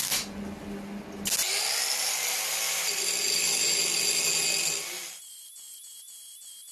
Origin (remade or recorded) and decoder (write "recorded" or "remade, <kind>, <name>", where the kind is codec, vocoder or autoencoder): recorded